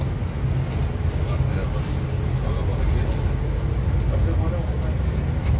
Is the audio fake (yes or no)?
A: no